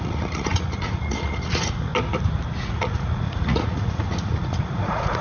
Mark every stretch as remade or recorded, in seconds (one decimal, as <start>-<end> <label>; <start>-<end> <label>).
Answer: 0.0-1.9 remade; 1.9-2.6 recorded; 2.6-5.2 remade